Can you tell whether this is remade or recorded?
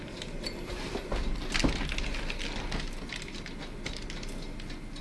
recorded